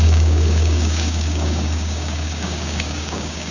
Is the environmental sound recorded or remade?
remade